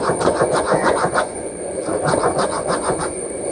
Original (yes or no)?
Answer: no